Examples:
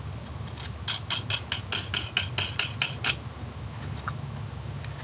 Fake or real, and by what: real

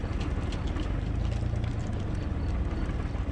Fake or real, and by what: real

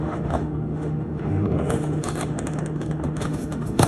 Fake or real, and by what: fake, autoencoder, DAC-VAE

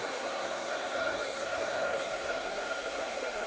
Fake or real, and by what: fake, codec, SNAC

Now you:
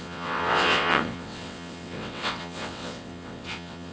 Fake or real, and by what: fake, vocoder, WaveNeXt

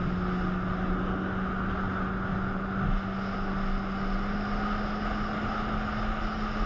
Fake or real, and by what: real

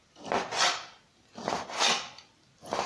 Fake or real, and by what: real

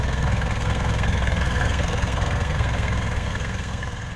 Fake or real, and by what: fake, codec, SNAC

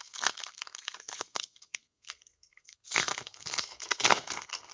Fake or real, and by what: fake, codec, SNAC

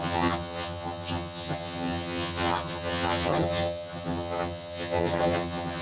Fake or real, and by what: fake, vocoder, HiFi-GAN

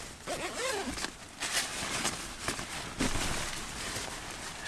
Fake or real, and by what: real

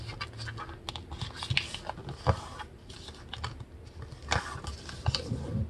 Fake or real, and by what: real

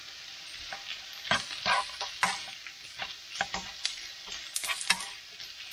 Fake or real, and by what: real